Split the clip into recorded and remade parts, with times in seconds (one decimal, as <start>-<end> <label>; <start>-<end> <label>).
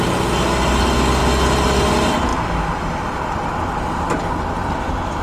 0.0-2.3 recorded; 2.3-4.0 remade; 4.0-5.2 recorded